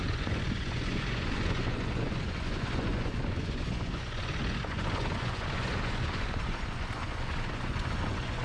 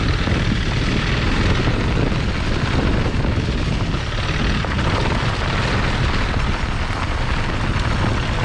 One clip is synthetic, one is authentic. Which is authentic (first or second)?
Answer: second